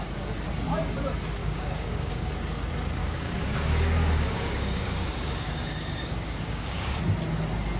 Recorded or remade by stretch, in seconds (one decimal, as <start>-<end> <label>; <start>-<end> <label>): 0.0-1.4 recorded; 1.4-2.3 remade; 2.3-3.0 recorded; 3.0-7.0 remade; 7.0-7.8 recorded